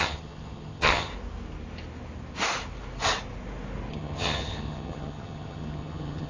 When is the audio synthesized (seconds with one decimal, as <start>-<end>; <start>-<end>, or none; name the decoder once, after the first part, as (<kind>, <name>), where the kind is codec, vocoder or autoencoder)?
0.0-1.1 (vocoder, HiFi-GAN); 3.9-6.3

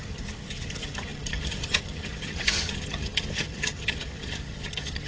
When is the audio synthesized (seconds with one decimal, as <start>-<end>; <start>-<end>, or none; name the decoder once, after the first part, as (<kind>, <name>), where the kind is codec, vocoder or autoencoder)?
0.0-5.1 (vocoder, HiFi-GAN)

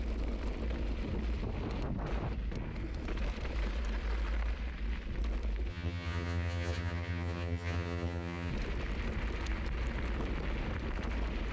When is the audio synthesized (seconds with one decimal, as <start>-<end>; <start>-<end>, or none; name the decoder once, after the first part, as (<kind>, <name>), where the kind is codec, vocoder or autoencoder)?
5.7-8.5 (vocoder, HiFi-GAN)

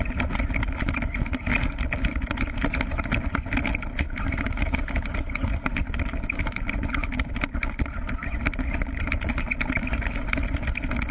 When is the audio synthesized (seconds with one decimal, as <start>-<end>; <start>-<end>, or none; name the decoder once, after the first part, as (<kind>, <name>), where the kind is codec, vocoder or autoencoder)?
none

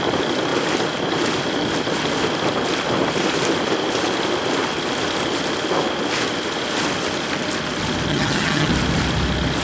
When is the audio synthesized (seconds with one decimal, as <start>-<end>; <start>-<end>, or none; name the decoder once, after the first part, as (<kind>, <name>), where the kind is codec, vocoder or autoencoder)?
8.1-8.7 (vocoder, HiFi-GAN)

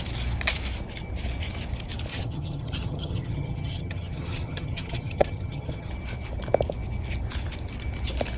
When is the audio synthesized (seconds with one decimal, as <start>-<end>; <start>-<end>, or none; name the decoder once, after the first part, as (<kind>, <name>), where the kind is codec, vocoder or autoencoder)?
2.1-5.9 (vocoder, HiFi-GAN)

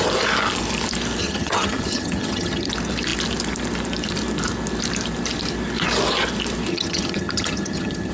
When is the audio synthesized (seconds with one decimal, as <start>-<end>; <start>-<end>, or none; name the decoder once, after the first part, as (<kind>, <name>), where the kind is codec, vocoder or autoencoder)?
1.2-2.7 (vocoder, HiFi-GAN); 6.7-8.1